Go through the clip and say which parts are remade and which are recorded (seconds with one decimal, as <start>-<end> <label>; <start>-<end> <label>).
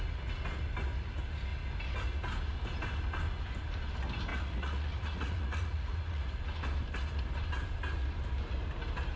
0.0-4.3 recorded; 4.3-6.4 remade; 6.4-9.2 recorded